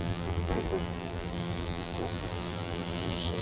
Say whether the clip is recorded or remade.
remade